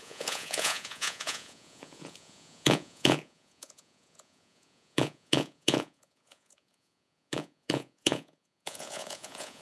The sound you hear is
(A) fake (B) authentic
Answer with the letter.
A